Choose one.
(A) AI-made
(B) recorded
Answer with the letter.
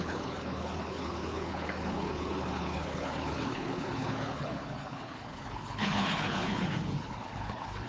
A